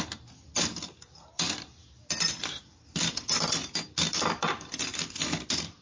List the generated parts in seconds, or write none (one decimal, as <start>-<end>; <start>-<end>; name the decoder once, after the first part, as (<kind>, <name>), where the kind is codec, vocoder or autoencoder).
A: none